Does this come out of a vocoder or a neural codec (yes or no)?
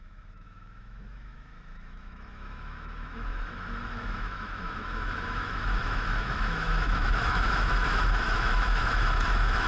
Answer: yes